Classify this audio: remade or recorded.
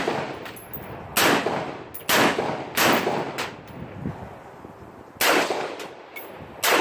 recorded